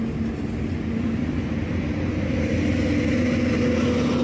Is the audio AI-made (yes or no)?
no